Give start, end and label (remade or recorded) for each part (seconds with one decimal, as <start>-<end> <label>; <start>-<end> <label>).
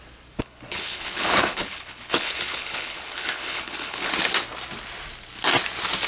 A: 0.0-0.4 recorded; 0.4-4.1 remade; 4.1-6.1 recorded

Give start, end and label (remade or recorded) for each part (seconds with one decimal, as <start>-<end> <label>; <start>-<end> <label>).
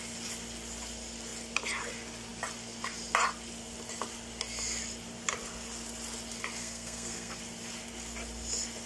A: 0.0-6.6 recorded; 6.6-7.4 remade; 7.4-8.9 recorded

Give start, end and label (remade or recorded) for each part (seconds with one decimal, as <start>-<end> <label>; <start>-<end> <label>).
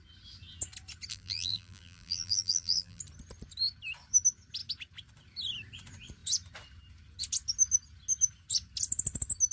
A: 0.0-1.1 recorded; 1.1-3.0 remade; 3.0-9.5 recorded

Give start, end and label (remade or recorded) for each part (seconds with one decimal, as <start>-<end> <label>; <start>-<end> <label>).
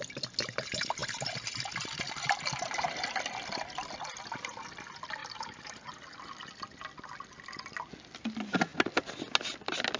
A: 0.0-5.2 recorded; 5.2-6.1 remade; 6.1-10.0 recorded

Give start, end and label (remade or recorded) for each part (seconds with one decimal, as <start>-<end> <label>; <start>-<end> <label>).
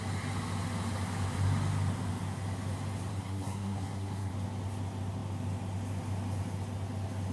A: 0.0-3.1 recorded; 3.1-4.3 remade; 4.3-7.3 recorded